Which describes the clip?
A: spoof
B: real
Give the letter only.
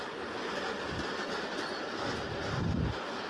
B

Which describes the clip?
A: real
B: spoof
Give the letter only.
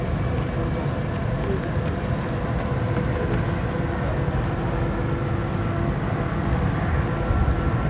A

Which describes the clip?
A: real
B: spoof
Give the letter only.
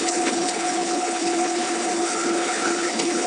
B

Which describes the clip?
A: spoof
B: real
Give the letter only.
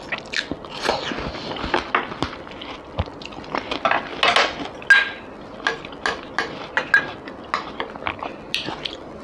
B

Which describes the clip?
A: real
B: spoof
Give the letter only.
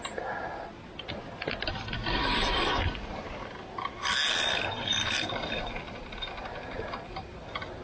A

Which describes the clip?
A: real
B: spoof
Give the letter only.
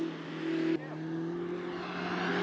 A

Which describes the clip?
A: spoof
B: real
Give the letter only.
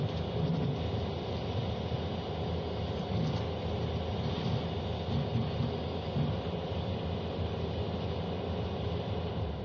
B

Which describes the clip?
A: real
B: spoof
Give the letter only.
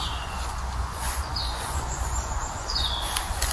B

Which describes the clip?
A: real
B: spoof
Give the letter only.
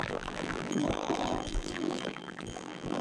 B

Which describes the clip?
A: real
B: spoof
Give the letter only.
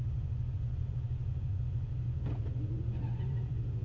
B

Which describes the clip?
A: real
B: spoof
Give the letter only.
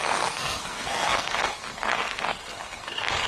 B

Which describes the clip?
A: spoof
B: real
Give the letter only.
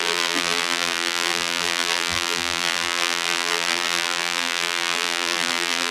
A